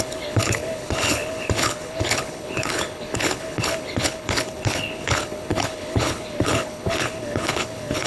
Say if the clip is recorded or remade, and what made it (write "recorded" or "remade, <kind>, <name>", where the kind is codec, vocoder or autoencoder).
remade, codec, HILCodec